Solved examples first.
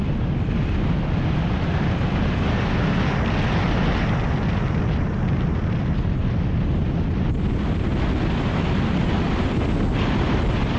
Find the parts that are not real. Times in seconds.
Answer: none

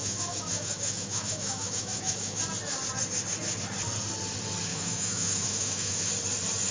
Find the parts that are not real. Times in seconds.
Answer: 0.0-2.4 (autoencoder, DAC-VAE); 4.7-6.1

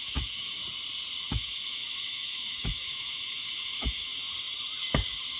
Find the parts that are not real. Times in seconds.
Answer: 0.0-0.6 (autoencoder, DAC-VAE); 1.3-4.1

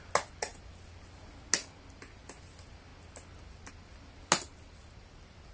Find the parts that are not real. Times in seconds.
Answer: none

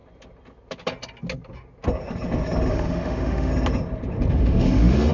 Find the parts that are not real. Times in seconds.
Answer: 2.7-3.5 (autoencoder, DAC-VAE); 4.3-5.1